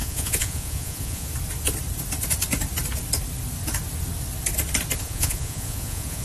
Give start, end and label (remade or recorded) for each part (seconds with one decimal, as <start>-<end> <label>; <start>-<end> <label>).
0.0-1.3 remade; 1.3-5.0 recorded; 5.0-6.2 remade